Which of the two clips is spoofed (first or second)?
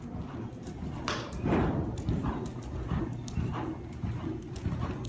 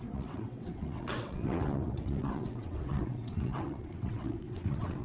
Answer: second